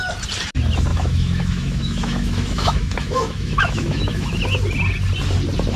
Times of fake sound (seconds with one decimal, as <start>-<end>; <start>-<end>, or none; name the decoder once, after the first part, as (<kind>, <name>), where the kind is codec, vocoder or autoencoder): 0.9-4.4 (autoencoder, DAC-VAE)